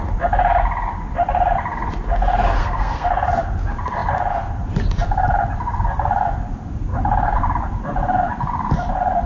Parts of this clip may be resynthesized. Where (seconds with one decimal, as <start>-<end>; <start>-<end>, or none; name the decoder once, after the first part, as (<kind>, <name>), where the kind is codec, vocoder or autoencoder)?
2.6-3.1 (codec, SNAC)